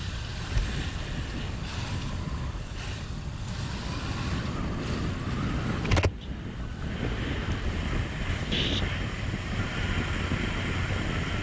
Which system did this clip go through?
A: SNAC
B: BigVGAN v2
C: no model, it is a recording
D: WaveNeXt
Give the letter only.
C